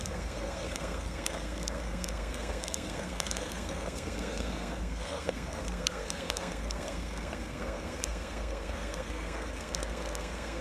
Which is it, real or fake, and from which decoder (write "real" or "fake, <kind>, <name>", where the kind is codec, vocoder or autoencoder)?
fake, codec, SNAC